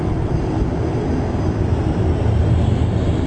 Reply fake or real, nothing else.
real